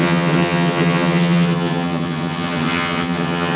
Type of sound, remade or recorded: remade